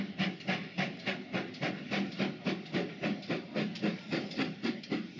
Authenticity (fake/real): real